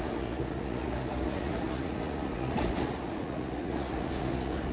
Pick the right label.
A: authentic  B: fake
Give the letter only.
B